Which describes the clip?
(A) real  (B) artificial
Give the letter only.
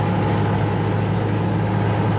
A